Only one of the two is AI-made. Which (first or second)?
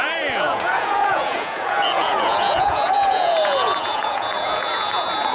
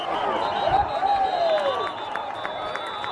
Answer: first